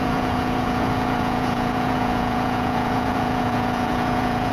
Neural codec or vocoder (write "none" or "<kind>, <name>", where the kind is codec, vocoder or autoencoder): vocoder, Vocos